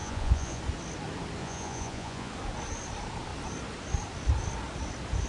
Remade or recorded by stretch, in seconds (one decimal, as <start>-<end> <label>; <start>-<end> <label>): 0.0-0.6 remade; 0.6-1.4 recorded; 1.4-2.3 remade; 2.3-5.3 recorded